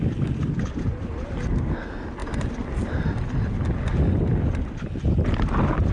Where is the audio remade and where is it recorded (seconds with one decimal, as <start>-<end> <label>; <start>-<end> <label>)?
0.0-5.9 recorded